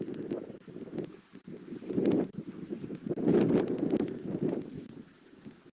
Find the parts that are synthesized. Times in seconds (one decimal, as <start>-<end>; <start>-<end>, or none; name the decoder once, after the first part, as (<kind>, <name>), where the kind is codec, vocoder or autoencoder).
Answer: none